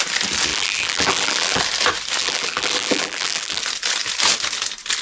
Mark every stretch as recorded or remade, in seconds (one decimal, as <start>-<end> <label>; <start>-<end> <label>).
0.0-0.5 recorded; 0.5-1.6 remade; 1.6-2.2 recorded; 2.2-3.6 remade; 3.6-5.0 recorded